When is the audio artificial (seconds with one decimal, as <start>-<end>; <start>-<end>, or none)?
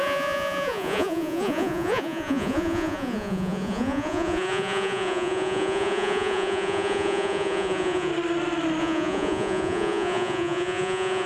0.0-8.1; 8.8-11.3